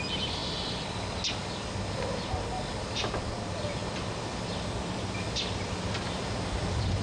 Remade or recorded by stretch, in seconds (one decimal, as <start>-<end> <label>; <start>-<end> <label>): 0.0-7.0 recorded